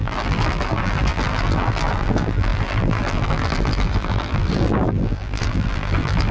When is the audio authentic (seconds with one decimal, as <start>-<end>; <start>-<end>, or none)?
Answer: none